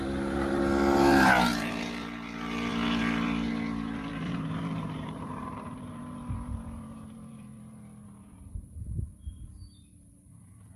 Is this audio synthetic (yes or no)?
yes